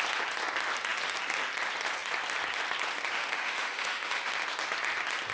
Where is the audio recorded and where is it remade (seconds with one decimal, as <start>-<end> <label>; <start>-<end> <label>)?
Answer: 0.0-3.2 recorded; 3.2-4.3 remade; 4.3-5.3 recorded